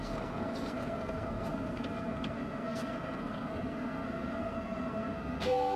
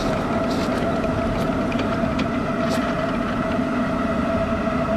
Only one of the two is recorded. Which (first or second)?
second